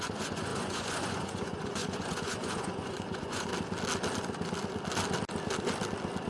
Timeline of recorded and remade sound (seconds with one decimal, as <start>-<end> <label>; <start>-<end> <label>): 0.0-3.5 remade; 3.5-6.3 recorded